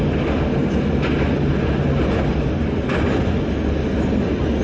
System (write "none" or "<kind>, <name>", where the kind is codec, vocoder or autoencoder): none